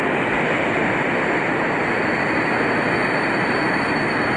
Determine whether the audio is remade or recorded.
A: recorded